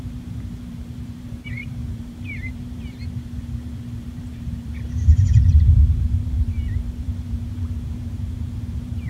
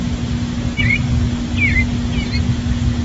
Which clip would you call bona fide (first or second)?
second